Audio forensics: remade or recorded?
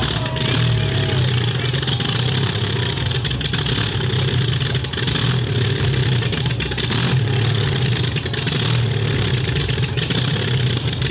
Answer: recorded